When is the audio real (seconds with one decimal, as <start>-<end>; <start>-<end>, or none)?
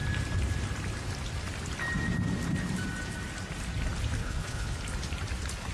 0.0-4.2; 4.8-5.7